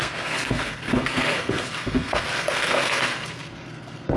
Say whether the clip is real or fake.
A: fake